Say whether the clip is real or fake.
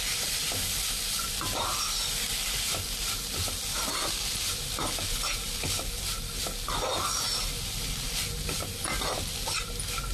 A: real